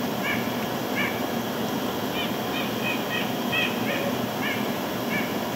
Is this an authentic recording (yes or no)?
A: yes